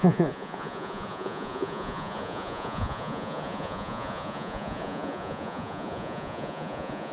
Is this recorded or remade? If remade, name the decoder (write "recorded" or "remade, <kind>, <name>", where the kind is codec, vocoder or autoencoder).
remade, vocoder, Vocos